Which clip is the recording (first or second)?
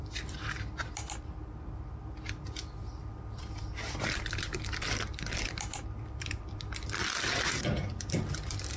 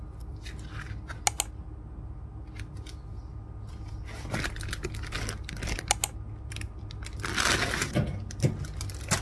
second